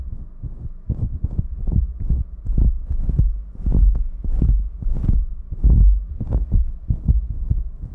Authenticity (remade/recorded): recorded